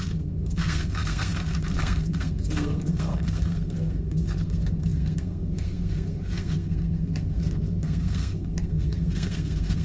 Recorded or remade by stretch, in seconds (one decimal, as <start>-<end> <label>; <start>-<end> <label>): 0.0-9.8 remade